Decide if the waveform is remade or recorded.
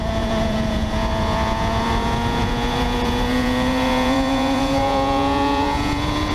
remade